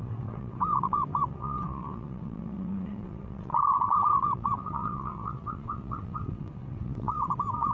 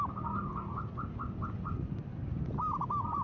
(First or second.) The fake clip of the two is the first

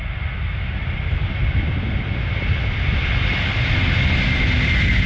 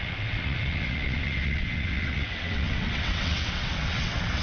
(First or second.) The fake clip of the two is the second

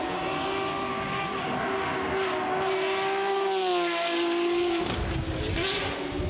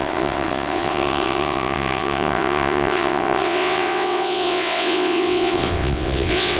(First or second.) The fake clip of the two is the second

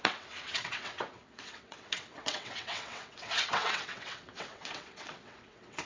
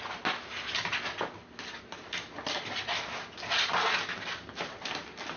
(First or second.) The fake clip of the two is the first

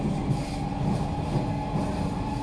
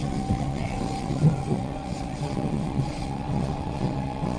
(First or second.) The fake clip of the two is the second